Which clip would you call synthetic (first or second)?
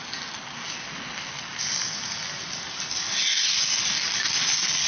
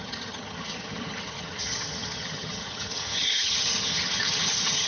second